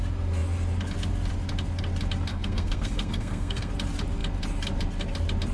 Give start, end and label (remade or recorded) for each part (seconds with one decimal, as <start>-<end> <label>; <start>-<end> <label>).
0.0-2.3 recorded; 2.3-3.7 remade; 3.7-5.5 recorded